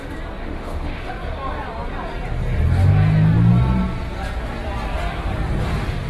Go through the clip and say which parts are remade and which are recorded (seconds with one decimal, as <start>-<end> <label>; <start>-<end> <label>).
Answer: 0.0-0.4 recorded; 0.4-1.1 remade; 1.1-6.1 recorded